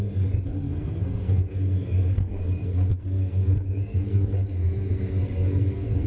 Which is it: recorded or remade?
remade